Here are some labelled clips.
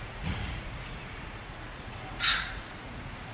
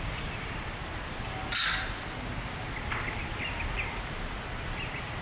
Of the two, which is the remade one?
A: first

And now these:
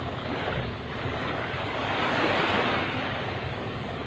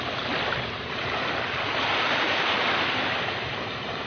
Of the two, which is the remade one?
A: first